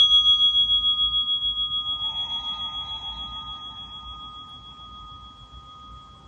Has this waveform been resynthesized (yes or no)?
no